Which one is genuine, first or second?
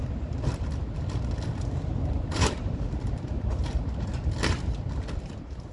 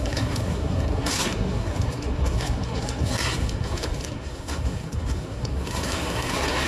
first